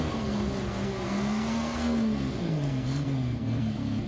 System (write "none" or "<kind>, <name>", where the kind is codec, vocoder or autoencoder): codec, SNAC